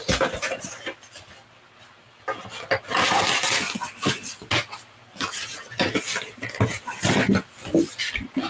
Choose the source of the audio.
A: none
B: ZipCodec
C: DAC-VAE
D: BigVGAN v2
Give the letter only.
A